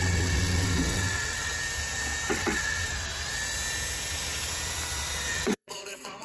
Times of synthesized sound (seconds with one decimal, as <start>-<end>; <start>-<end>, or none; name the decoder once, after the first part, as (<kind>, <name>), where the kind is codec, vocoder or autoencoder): 0.0-1.5 (vocoder, WaveNeXt); 2.3-3.1; 5.3-6.2